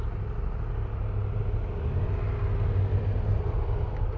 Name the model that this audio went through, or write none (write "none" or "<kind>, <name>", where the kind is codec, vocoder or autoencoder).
none